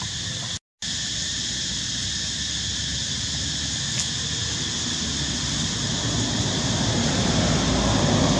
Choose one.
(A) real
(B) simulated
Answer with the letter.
A